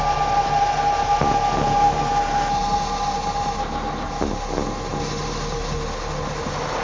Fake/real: real